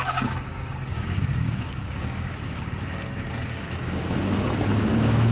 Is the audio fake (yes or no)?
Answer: yes